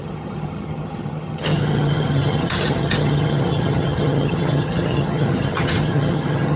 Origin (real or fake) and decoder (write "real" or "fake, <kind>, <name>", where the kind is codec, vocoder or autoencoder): fake, vocoder, HiFi-GAN